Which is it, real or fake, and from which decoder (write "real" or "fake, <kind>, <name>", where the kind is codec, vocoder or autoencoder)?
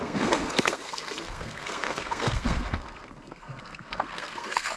fake, codec, SNAC